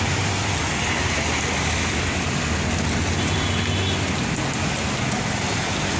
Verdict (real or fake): real